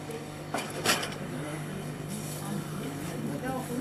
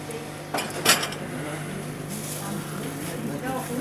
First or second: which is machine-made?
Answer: first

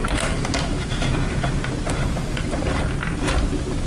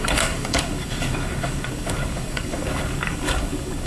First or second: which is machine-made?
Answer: second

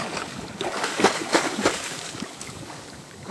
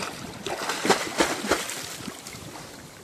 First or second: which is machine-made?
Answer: first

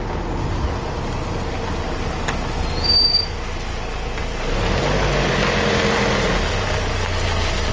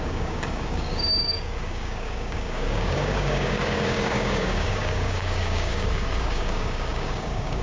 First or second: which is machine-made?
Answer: second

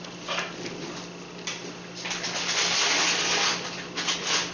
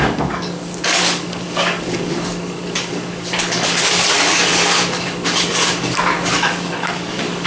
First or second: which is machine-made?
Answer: second